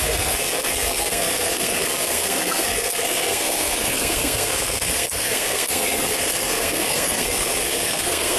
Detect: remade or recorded remade